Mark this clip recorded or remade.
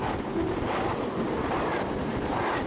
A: recorded